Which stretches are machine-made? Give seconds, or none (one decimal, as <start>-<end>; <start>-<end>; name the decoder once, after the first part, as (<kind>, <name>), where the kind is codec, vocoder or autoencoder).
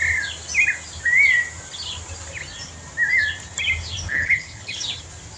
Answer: 4.1-4.8 (codec, HILCodec)